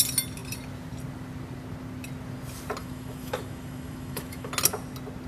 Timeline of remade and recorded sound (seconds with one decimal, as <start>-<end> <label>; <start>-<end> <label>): 0.0-2.8 recorded; 2.8-4.5 remade; 4.5-5.3 recorded